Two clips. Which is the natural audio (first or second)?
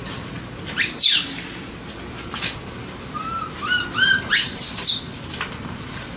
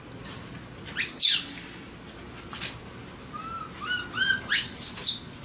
second